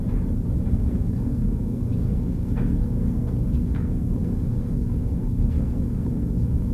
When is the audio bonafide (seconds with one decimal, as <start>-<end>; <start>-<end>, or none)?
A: 0.0-0.7